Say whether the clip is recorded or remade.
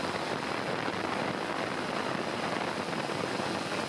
recorded